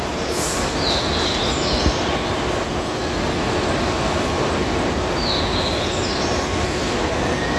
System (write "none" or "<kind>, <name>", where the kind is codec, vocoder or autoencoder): none